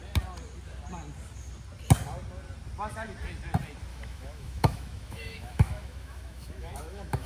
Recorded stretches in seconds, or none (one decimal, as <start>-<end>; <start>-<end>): 0.0-3.9